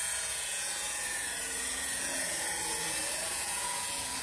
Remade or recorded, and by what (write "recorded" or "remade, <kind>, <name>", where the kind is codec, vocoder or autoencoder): remade, vocoder, Vocos